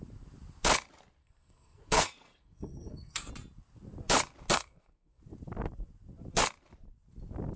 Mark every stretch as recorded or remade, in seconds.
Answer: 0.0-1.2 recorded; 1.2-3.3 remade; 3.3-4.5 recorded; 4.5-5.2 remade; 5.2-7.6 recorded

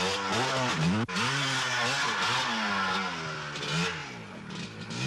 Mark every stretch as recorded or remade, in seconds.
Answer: 0.0-5.1 recorded

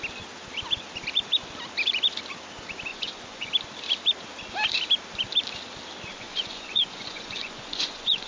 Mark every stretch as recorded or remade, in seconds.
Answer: 0.0-2.9 recorded; 2.9-3.5 remade; 3.5-6.1 recorded; 6.1-8.3 remade

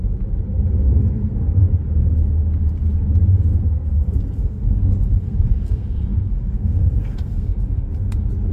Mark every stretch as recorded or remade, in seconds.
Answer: 0.0-0.9 recorded; 0.9-1.6 remade; 1.6-3.5 recorded; 3.5-7.9 remade; 7.9-8.5 recorded

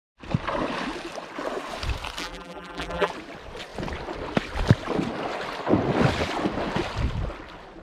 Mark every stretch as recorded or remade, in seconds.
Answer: 0.0-2.2 recorded; 2.2-3.1 remade; 3.1-7.8 recorded